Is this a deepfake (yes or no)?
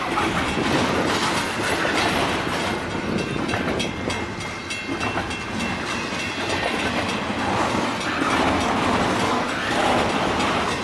no